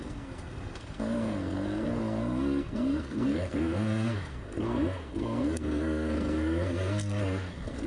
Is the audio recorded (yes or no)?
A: no